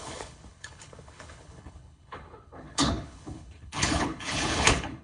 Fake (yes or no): yes